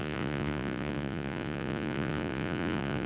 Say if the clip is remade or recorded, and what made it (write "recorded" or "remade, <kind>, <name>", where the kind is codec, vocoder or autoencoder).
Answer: remade, vocoder, Vocos